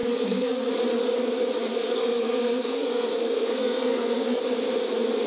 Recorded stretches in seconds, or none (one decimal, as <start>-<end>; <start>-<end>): 0.7-1.7; 4.4-5.3